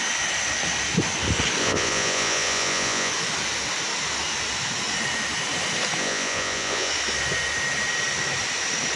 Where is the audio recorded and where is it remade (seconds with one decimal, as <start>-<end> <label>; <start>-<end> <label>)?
0.0-1.6 recorded; 1.6-3.1 remade; 3.1-6.0 recorded; 6.0-6.9 remade; 6.9-9.0 recorded